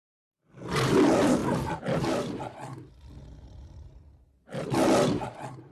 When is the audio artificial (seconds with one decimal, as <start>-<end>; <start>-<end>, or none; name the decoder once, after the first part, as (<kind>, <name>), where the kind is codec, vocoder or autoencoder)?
none